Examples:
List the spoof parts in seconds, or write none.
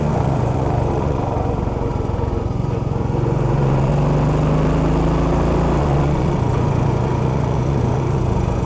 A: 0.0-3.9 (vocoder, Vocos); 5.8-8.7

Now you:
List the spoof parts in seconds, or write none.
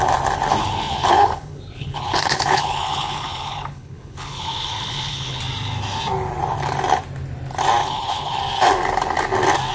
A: 0.6-5.4 (codec, HILCodec); 7.8-8.4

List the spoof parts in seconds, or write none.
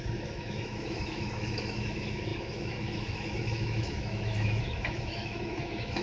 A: 0.0-6.0 (autoencoder, DAC-VAE)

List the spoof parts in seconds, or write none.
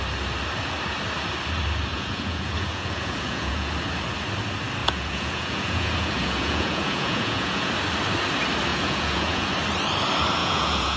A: 1.9-3.7 (vocoder, Vocos); 4.8-7.7; 8.7-9.5; 10.4-11.0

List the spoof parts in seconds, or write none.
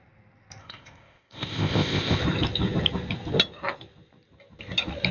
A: 0.6-2.2 (codec, ZipCodec)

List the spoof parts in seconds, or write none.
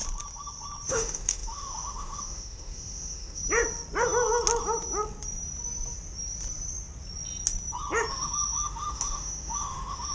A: 0.9-3.4 (autoencoder, DAC-VAE); 8.1-10.1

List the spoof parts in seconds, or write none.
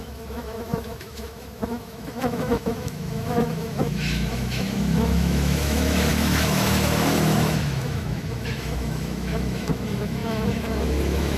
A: 0.0-11.4 (autoencoder, DAC-VAE)